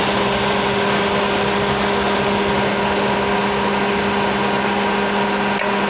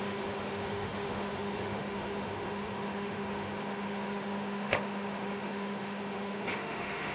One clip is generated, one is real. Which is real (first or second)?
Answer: first